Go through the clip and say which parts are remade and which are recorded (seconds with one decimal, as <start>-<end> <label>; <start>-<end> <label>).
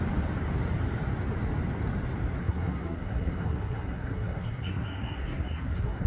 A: 0.0-2.4 recorded; 2.4-6.1 remade